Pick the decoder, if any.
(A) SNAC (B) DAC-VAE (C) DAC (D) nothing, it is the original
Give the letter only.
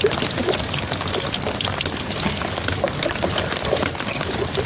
D